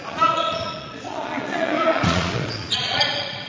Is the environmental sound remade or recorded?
remade